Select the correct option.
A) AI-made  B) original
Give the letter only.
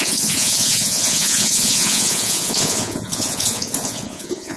A